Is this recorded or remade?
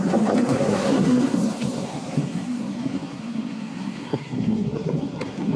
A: remade